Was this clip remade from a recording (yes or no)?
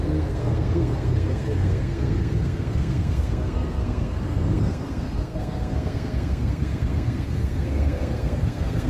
yes